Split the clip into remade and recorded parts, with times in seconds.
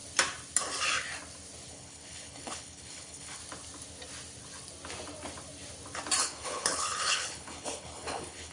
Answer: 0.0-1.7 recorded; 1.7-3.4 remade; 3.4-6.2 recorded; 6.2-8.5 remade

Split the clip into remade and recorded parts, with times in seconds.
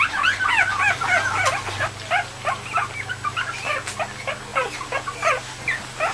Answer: 0.0-6.1 recorded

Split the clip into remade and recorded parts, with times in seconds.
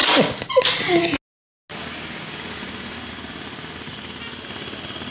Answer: 0.0-5.1 recorded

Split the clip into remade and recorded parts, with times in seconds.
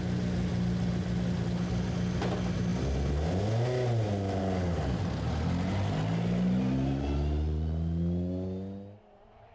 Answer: 0.0-9.5 recorded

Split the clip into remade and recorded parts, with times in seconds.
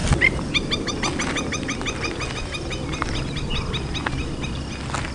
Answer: 0.0-5.1 recorded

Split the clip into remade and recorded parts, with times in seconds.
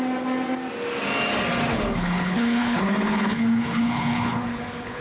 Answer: 0.0-1.7 recorded; 1.7-5.0 remade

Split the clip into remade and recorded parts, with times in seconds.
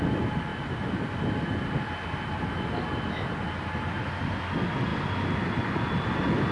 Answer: 0.0-6.5 recorded